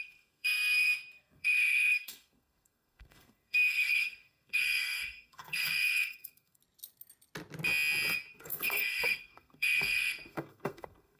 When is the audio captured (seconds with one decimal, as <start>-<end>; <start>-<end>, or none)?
6.6-8.3